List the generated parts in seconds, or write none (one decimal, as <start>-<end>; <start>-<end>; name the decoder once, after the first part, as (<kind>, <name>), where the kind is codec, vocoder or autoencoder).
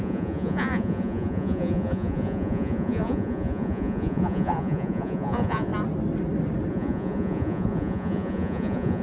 0.0-5.7 (vocoder, Vocos); 6.7-9.0